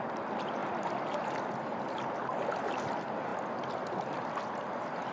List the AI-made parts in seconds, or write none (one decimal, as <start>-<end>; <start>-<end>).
none